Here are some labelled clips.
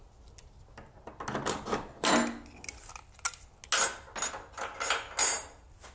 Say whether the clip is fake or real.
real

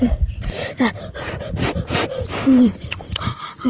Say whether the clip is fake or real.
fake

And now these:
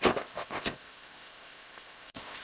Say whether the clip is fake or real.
fake